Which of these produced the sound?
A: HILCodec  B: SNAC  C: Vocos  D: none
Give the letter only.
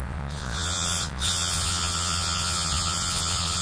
C